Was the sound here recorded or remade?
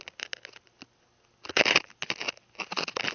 recorded